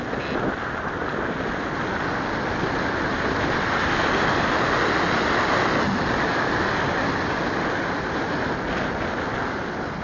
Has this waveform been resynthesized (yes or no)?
no